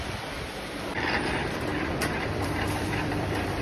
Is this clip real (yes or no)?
no